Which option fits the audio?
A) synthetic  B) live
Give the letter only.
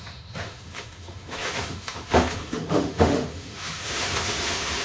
A